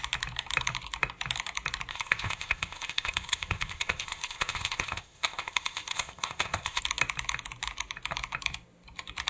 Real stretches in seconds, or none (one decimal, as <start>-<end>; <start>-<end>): 0.0-1.9; 6.8-9.3